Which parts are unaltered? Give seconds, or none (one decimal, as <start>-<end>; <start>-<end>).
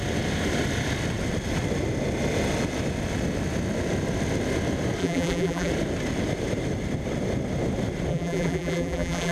0.0-5.0; 5.7-8.1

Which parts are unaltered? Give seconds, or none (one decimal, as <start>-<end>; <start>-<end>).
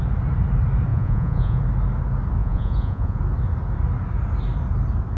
0.0-0.9; 1.6-2.4; 3.2-5.2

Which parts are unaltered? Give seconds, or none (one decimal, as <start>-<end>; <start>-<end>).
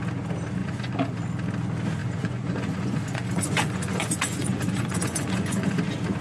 0.0-0.6; 1.2-2.0; 5.7-6.2